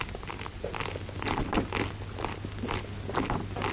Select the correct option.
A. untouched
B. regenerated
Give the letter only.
A